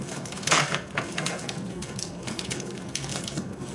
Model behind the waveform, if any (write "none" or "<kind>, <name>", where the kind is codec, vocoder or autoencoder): codec, SNAC